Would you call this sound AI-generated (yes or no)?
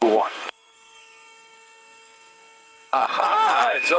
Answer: yes